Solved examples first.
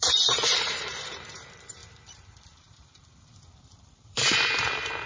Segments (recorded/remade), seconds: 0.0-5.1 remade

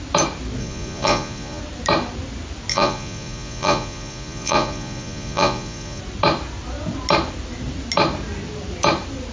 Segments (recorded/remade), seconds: 0.0-0.6 recorded; 0.6-1.6 remade; 1.6-2.7 recorded; 2.7-6.0 remade; 6.0-9.3 recorded